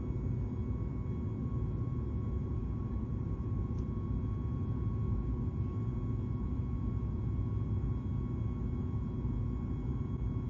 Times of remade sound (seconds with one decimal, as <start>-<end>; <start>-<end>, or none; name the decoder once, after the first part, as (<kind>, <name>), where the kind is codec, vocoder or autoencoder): 2.4-3.8 (vocoder, BigVGAN v2)